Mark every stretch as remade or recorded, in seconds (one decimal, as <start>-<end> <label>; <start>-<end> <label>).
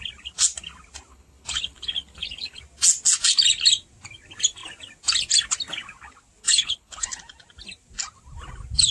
0.0-1.1 recorded; 1.1-2.6 remade; 2.6-6.4 recorded; 6.4-7.2 remade; 7.2-8.9 recorded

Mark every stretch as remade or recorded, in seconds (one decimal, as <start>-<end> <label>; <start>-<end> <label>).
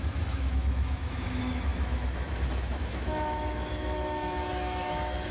0.0-5.3 remade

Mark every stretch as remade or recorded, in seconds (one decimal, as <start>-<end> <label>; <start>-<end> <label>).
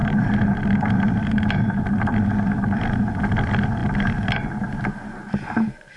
0.0-6.0 recorded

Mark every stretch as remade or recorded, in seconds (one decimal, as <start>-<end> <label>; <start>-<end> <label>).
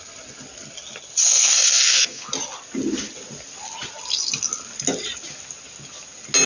0.0-1.2 recorded; 1.2-2.3 remade; 2.3-6.5 recorded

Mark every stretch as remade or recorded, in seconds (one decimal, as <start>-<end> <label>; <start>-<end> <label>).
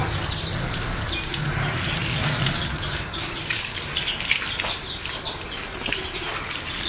0.0-6.9 recorded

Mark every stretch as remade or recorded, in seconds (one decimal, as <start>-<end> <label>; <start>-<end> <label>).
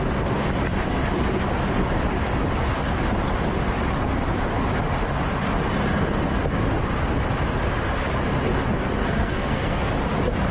0.0-9.0 recorded; 9.0-9.9 remade; 9.9-10.5 recorded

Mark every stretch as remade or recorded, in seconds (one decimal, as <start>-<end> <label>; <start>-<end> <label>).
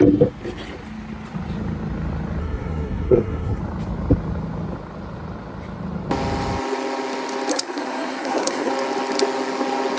0.0-2.4 recorded; 2.4-3.6 remade; 3.6-7.5 recorded; 7.5-8.7 remade; 8.7-10.0 recorded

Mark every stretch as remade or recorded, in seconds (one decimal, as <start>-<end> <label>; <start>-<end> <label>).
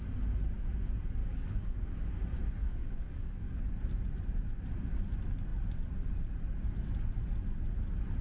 0.0-1.2 recorded; 1.2-1.9 remade; 1.9-2.6 recorded; 2.6-3.6 remade; 3.6-8.2 recorded